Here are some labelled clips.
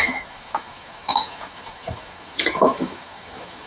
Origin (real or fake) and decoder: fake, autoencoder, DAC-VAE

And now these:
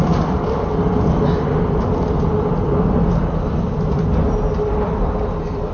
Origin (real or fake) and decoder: real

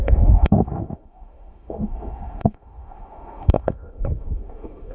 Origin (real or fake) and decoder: fake, autoencoder, DAC-VAE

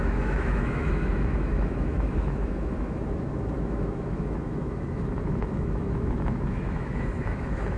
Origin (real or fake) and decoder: fake, autoencoder, DAC-VAE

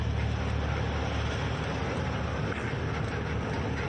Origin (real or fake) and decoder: real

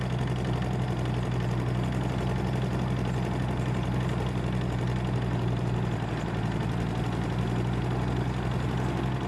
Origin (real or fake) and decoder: real